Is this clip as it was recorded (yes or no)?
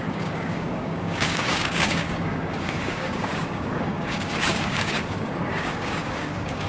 no